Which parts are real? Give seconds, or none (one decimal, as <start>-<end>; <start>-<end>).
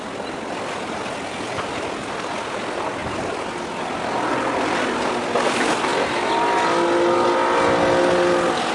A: 0.0-8.7